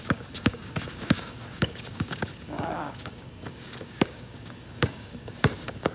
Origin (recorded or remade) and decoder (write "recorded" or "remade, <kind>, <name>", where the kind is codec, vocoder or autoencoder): remade, codec, DAC